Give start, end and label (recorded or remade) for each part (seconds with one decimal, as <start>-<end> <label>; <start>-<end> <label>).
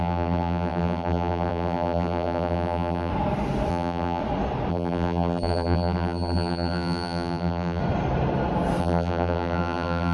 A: 0.0-3.1 remade; 3.1-3.7 recorded; 3.7-4.2 remade; 4.2-4.7 recorded; 4.7-7.8 remade; 7.8-8.8 recorded; 8.8-10.1 remade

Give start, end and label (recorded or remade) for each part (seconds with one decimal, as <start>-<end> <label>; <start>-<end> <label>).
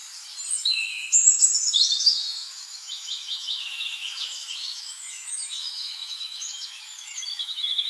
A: 0.0-0.5 recorded; 0.5-7.9 remade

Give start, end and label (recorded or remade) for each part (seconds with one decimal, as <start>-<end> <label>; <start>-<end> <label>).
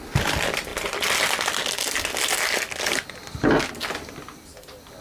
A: 0.0-5.0 recorded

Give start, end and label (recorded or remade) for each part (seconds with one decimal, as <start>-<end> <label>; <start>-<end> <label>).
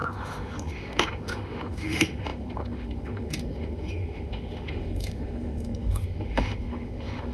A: 0.0-7.3 remade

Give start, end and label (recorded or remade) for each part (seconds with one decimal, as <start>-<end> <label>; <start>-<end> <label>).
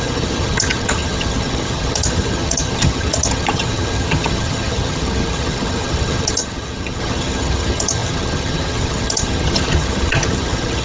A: 0.0-10.8 remade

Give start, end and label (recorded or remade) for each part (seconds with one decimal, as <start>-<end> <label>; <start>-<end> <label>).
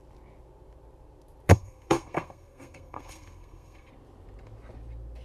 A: 0.0-1.5 recorded; 1.5-3.9 remade; 3.9-5.2 recorded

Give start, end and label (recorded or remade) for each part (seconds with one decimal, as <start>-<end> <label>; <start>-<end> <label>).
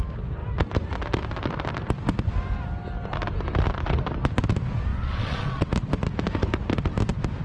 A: 0.0-4.9 recorded; 4.9-5.7 remade; 5.7-7.4 recorded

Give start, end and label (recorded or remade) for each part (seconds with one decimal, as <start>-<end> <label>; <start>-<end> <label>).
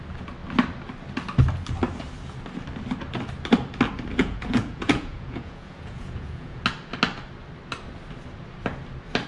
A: 0.0-4.2 recorded; 4.2-6.6 remade; 6.6-9.3 recorded